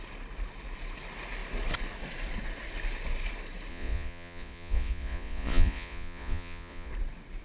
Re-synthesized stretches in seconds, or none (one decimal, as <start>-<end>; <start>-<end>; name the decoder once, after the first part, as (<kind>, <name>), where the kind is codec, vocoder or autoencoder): 3.7-6.9 (vocoder, Vocos)